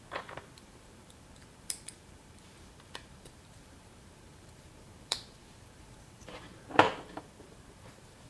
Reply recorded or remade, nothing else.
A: remade